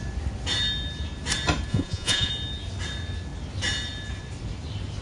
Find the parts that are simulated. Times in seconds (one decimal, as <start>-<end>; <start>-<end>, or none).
1.7-2.3